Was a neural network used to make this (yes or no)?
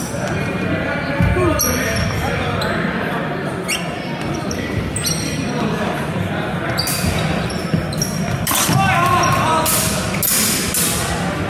no